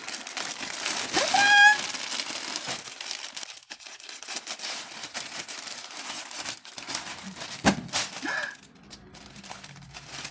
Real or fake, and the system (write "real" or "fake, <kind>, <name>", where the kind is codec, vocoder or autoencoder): real